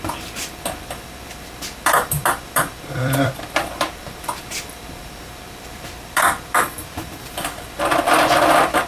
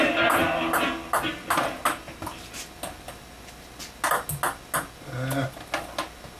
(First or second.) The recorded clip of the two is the second